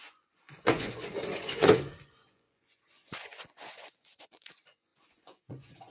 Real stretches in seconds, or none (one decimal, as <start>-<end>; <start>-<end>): none